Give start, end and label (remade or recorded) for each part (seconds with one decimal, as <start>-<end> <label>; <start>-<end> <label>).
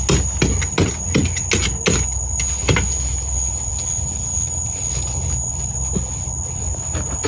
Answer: 0.0-7.3 recorded